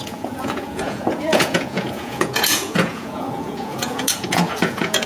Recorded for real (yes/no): no